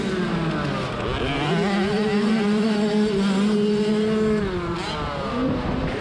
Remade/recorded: recorded